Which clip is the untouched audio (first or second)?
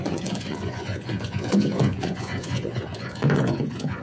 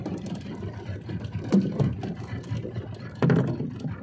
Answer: second